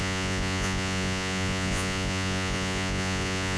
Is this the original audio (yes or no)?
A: no